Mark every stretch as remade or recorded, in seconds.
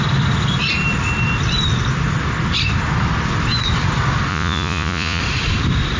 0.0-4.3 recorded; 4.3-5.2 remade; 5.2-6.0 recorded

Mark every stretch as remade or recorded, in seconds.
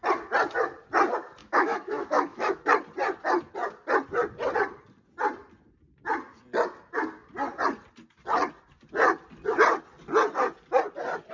0.0-1.4 recorded; 1.4-2.6 remade; 2.6-11.3 recorded